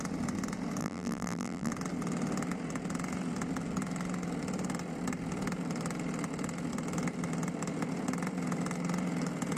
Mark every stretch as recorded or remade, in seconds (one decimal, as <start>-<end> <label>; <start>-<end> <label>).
0.0-0.8 recorded; 0.8-1.7 remade; 1.7-9.6 recorded